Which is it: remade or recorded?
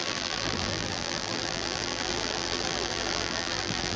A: remade